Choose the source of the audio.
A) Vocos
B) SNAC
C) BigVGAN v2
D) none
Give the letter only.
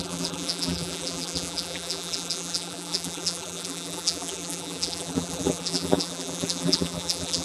C